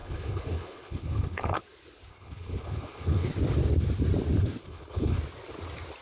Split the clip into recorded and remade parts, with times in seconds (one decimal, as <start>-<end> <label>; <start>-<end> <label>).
0.0-1.6 remade; 1.6-2.1 recorded; 2.1-3.3 remade; 3.3-4.6 recorded; 4.6-5.2 remade; 5.2-6.0 recorded